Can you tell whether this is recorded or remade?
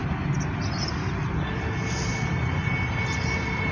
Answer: recorded